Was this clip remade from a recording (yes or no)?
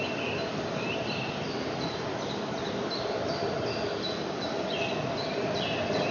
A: no